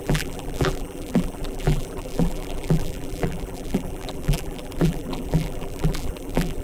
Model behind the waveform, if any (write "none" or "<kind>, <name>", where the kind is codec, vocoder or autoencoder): vocoder, BigVGAN v2